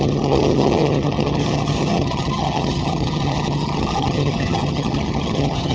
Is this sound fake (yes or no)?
yes